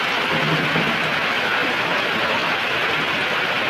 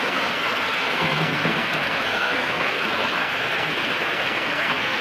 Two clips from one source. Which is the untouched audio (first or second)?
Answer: first